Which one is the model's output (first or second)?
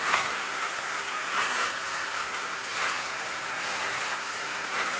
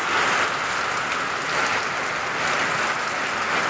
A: first